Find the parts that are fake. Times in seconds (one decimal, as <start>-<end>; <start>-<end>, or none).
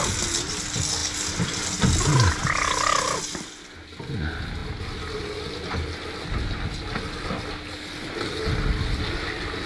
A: none